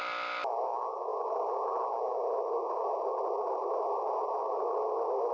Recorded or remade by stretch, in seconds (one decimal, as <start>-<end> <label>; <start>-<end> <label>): 0.0-5.3 recorded

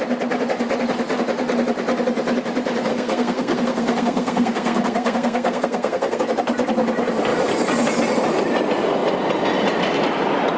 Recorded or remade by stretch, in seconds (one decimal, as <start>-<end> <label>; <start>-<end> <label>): 0.0-2.9 recorded; 2.9-6.2 remade; 6.2-10.6 recorded

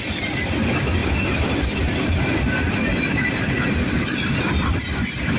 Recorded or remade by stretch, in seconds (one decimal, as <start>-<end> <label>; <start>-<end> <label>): 0.0-5.4 recorded